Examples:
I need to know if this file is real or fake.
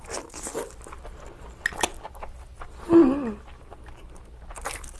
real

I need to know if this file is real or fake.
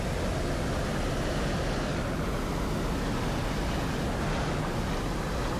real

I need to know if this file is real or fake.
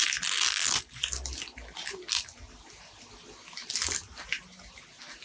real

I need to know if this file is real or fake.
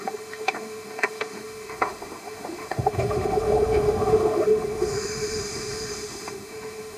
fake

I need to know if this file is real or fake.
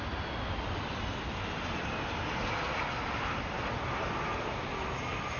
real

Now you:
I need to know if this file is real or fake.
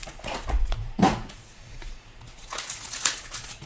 fake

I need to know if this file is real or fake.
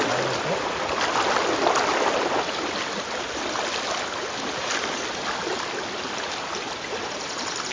real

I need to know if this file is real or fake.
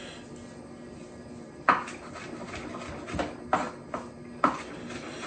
real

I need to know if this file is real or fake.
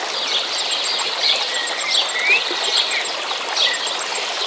real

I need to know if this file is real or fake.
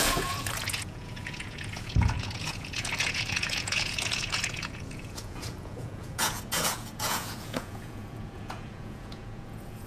fake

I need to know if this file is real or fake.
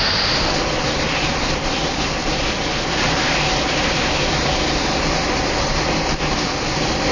real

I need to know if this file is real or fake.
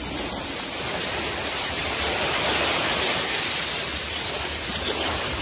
real